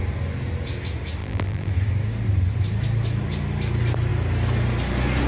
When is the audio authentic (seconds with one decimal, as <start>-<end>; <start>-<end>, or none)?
0.0-1.2; 1.7-5.3

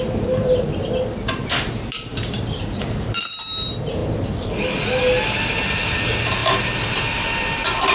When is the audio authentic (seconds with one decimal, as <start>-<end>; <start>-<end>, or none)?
4.0-5.0; 6.4-7.0

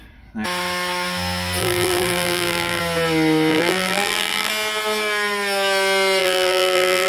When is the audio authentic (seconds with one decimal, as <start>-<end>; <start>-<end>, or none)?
0.0-1.6; 2.8-3.5; 4.5-6.2

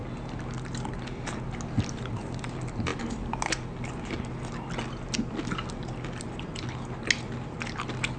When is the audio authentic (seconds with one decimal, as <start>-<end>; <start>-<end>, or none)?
0.0-8.2

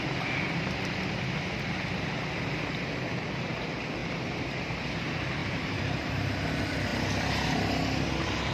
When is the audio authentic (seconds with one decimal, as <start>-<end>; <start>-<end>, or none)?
0.0-4.0; 4.6-5.4; 6.3-8.5

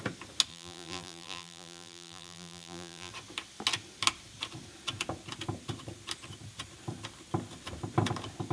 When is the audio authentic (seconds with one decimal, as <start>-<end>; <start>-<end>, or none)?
0.0-0.5; 3.1-8.5